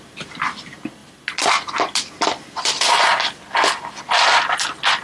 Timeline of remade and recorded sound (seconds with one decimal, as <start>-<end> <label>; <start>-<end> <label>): 0.0-5.0 recorded

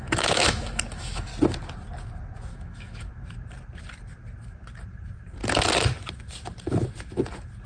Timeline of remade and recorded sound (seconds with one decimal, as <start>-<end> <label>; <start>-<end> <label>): 0.0-1.3 remade; 1.3-2.5 recorded; 2.5-3.1 remade; 3.1-7.7 recorded